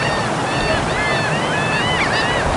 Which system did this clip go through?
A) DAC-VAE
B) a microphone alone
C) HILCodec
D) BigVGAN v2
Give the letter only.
B